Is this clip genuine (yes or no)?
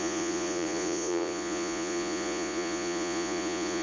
no